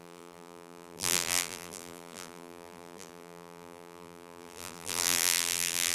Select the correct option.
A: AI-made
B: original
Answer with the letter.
A